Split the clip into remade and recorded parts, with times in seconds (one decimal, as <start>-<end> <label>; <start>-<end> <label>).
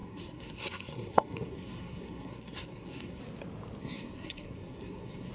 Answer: 0.0-3.2 remade; 3.2-3.8 recorded; 3.8-5.3 remade